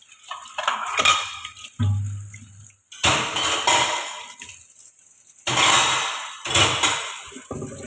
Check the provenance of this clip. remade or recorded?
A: recorded